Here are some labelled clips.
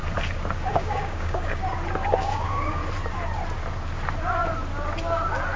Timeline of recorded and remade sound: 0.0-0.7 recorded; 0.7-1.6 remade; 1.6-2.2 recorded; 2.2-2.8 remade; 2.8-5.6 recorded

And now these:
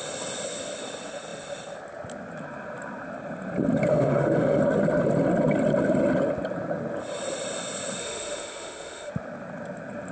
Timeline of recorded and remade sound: 0.0-3.9 recorded; 3.9-4.6 remade; 4.6-8.0 recorded; 8.0-9.1 remade; 9.1-10.1 recorded

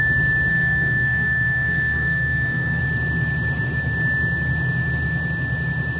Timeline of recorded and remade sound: 0.0-0.5 recorded; 0.5-2.8 remade; 2.8-6.0 recorded